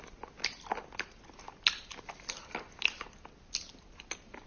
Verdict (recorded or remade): recorded